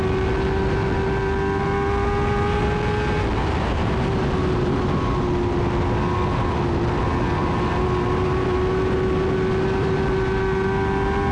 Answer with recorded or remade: recorded